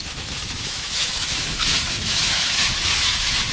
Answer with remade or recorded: remade